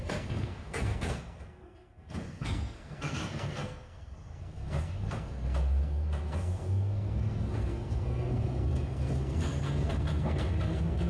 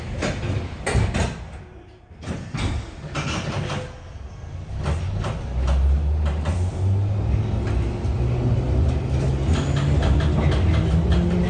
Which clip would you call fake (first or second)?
first